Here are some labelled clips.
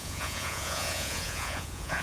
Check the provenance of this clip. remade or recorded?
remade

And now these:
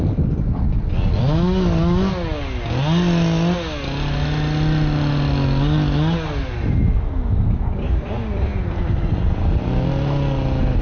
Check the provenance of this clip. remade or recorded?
recorded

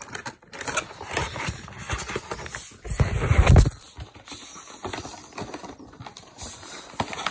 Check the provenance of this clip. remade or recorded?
recorded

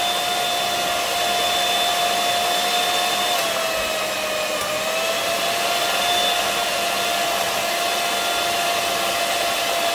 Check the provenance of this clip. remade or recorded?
recorded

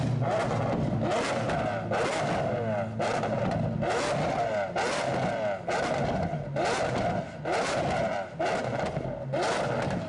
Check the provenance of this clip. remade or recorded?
recorded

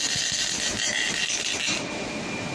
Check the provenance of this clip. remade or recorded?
recorded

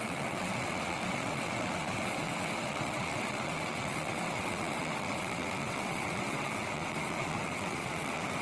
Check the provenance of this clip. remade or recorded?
remade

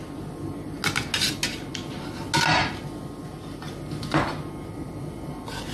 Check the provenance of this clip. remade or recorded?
recorded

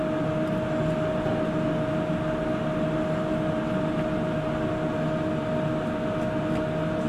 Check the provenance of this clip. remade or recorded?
recorded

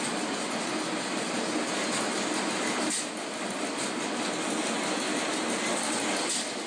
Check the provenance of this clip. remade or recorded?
recorded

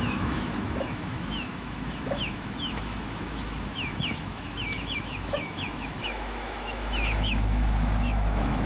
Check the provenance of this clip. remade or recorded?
remade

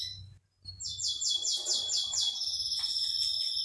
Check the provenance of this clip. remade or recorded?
recorded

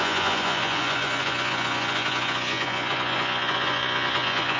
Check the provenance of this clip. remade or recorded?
remade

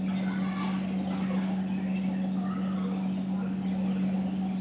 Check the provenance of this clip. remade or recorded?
recorded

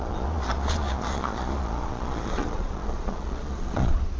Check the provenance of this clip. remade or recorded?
remade